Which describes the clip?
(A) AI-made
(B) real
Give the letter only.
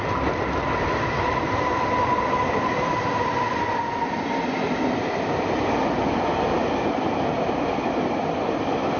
A